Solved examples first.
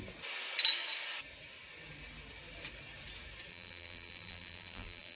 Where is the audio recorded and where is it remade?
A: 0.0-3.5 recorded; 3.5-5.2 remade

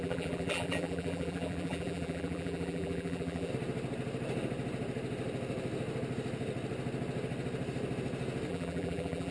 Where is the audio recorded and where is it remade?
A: 0.0-3.5 remade; 3.5-8.5 recorded; 8.5-9.3 remade

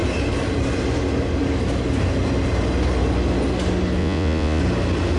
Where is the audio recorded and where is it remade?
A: 0.0-4.0 recorded; 4.0-4.6 remade; 4.6-5.2 recorded

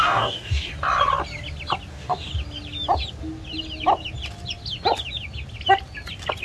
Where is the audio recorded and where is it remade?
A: 0.0-0.7 remade; 0.7-1.9 recorded; 1.9-2.3 remade; 2.3-6.4 recorded

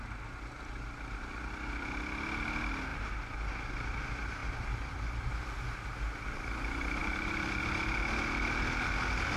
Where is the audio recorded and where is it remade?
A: 0.0-7.0 recorded; 7.0-7.6 remade; 7.6-9.4 recorded

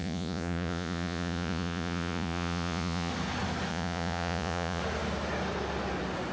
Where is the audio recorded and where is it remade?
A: 0.0-3.1 remade; 3.1-3.7 recorded; 3.7-4.8 remade; 4.8-6.3 recorded

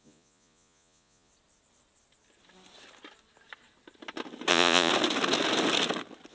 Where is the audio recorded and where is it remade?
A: 0.0-1.3 remade; 1.3-4.5 recorded; 4.5-4.9 remade; 4.9-6.3 recorded

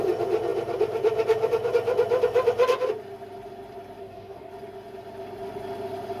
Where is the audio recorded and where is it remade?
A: 0.0-4.0 recorded; 4.0-4.5 remade; 4.5-6.2 recorded